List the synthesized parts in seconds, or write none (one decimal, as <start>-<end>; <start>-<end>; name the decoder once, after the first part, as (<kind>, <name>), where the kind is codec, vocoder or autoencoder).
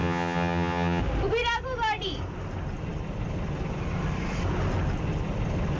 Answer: 0.0-1.0 (vocoder, HiFi-GAN)